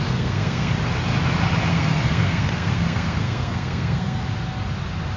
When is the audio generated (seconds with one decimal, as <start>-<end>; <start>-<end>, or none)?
0.0-0.7; 1.7-4.2